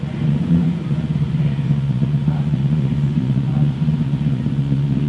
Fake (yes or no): yes